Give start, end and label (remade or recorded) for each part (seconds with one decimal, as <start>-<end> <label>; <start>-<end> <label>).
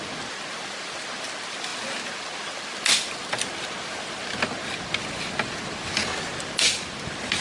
0.0-7.4 recorded